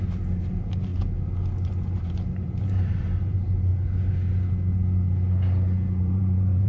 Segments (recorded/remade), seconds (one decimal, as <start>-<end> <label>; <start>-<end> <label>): 0.0-0.9 remade; 0.9-2.0 recorded; 2.0-3.7 remade; 3.7-6.0 recorded; 6.0-6.7 remade